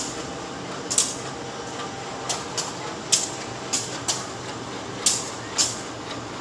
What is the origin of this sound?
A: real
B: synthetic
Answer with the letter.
A